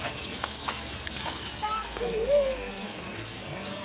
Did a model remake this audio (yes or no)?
yes